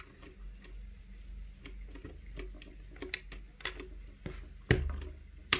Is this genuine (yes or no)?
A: yes